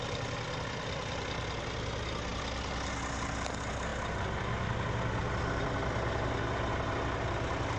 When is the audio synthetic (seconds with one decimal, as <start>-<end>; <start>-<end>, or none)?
none